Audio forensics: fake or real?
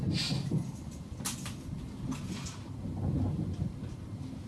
real